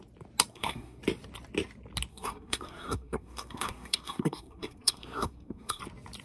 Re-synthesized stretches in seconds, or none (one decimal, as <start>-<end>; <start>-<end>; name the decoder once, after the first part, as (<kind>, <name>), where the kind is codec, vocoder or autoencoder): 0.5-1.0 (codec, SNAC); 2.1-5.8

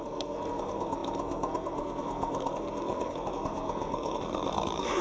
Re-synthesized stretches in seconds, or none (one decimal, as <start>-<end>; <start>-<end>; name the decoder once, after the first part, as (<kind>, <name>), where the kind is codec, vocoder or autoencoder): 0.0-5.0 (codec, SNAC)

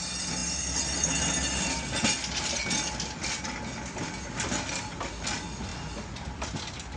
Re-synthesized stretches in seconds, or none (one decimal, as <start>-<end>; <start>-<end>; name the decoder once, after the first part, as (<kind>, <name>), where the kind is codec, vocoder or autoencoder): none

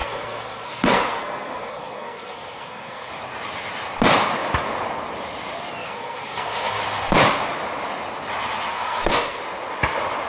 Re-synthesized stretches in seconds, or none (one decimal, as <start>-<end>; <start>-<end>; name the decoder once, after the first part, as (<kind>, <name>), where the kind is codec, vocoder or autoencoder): 0.0-3.1 (codec, SNAC); 5.8-6.8; 8.7-9.4